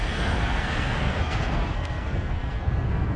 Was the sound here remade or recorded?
remade